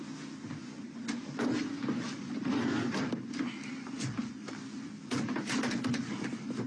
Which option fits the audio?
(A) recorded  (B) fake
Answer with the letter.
A